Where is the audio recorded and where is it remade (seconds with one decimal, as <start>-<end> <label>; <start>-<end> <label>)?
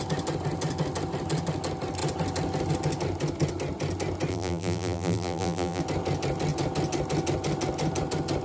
0.0-4.3 recorded; 4.3-5.8 remade; 5.8-8.4 recorded